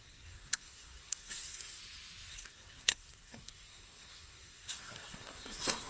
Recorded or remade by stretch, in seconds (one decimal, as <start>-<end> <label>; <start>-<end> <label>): 0.0-1.8 remade; 1.8-2.3 recorded; 2.3-5.9 remade